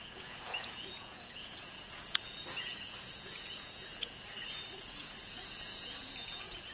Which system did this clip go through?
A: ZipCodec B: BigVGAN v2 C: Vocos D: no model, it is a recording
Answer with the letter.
C